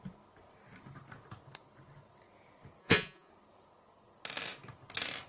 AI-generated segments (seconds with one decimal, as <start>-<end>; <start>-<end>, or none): 2.8-3.3